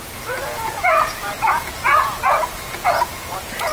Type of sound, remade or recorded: remade